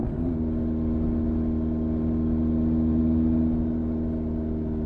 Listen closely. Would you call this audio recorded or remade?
recorded